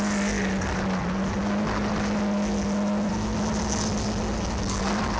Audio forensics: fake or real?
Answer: real